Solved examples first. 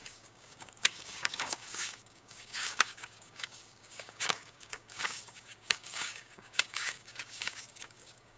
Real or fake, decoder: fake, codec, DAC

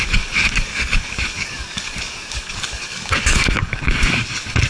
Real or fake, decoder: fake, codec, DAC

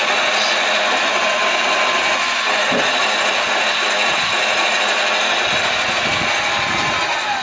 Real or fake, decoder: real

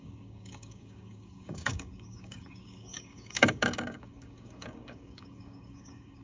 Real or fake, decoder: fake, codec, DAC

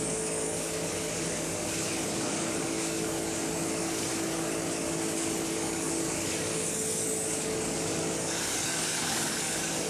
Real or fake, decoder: fake, codec, DAC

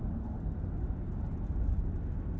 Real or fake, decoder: real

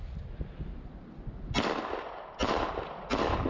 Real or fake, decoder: real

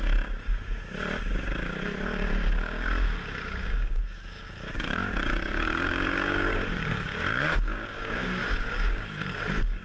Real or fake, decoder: fake, codec, DAC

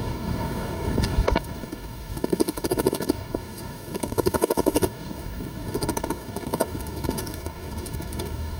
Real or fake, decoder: fake, codec, DAC